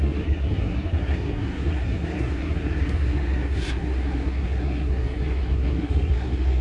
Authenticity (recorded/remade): remade